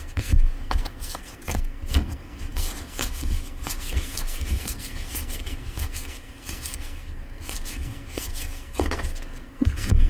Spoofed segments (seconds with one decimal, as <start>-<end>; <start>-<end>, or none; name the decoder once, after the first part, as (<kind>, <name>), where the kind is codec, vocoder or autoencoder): 0.0-10.1 (codec, SNAC)